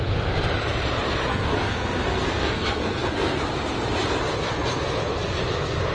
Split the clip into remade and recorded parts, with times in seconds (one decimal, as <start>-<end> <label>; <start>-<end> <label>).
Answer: 0.0-1.3 recorded; 1.3-3.4 remade; 3.4-5.9 recorded